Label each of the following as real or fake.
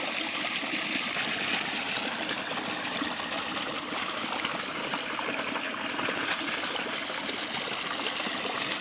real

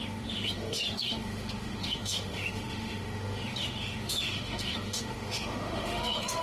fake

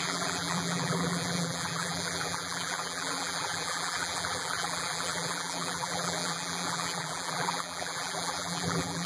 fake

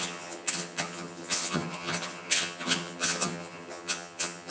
fake